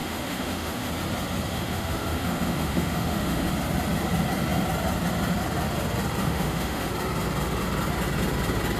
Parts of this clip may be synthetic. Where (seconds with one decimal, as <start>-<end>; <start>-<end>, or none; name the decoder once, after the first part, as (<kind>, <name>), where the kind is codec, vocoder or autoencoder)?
0.0-0.9 (autoencoder, DAC-VAE); 1.5-3.5; 6.2-6.9